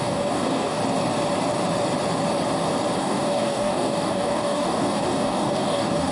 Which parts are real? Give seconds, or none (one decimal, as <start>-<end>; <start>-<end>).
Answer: 0.8-3.0